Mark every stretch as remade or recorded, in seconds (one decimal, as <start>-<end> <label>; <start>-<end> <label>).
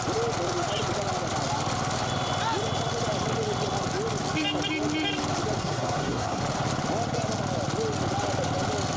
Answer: 0.0-5.6 recorded; 5.6-6.4 remade; 6.4-9.0 recorded